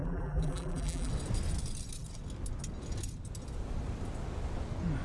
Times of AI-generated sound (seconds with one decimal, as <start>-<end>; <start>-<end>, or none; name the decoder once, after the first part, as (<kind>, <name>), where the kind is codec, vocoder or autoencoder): 0.0-1.1 (vocoder, BigVGAN v2)